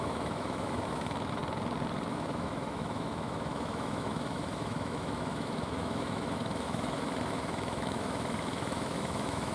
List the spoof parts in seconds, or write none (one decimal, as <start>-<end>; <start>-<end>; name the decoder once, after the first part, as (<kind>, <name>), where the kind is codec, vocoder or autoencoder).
0.0-1.4 (autoencoder, DAC-VAE); 2.1-9.5